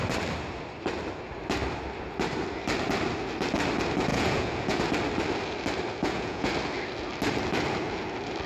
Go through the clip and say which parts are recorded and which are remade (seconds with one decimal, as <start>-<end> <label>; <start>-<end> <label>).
0.0-4.1 recorded; 4.1-4.8 remade; 4.8-6.0 recorded; 6.0-6.5 remade; 6.5-8.5 recorded